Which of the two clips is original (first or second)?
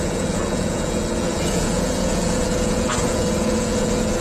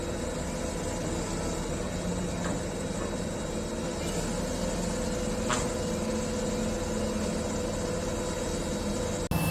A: second